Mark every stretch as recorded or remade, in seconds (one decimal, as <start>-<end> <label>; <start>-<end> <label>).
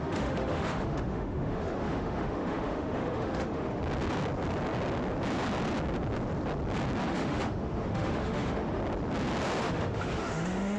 0.0-3.8 remade; 3.8-7.1 recorded; 7.1-8.8 remade; 8.8-9.6 recorded; 9.6-10.8 remade